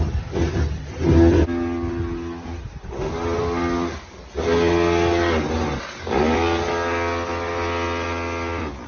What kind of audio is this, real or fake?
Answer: real